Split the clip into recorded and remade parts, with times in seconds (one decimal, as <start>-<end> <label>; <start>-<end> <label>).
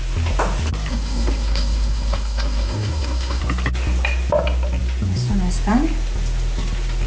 0.0-0.9 recorded; 0.9-3.4 remade; 3.4-7.1 recorded